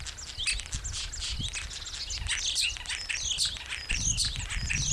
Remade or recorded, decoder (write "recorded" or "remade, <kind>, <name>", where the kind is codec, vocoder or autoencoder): recorded